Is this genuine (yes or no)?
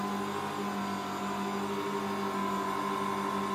yes